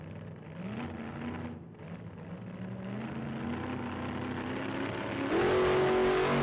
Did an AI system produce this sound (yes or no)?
no